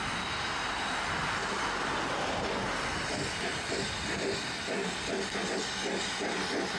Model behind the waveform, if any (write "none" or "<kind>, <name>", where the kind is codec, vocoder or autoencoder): none